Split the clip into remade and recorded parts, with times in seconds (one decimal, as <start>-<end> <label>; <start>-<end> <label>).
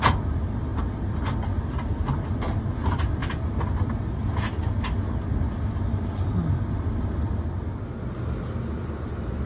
0.0-9.5 recorded